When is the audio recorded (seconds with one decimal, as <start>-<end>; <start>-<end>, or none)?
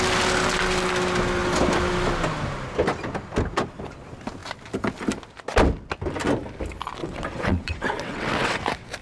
0.0-7.0; 8.6-9.0